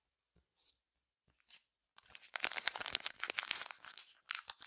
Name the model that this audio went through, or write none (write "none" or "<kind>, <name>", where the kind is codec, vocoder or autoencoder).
vocoder, BigVGAN v2